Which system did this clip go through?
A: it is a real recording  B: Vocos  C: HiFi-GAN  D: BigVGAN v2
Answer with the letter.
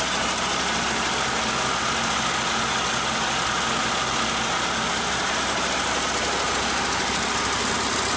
A